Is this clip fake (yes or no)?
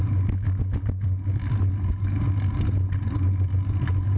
no